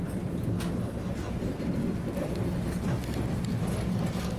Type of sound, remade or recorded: remade